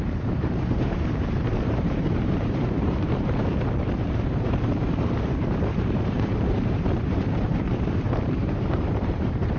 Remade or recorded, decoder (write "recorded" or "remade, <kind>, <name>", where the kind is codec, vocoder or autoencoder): remade, vocoder, BigVGAN v2